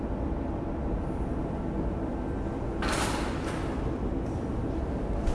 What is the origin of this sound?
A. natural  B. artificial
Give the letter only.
A